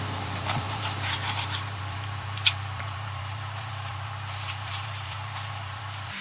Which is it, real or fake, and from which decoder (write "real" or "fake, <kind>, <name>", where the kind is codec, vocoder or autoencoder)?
fake, vocoder, BigVGAN v2